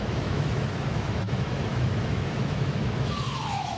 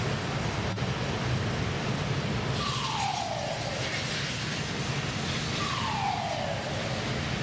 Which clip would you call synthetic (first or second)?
first